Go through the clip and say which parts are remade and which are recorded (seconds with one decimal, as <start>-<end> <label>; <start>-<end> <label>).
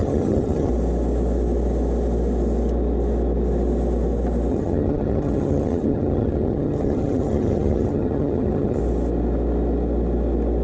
0.0-0.7 remade; 0.7-4.5 recorded; 4.5-8.8 remade; 8.8-10.6 recorded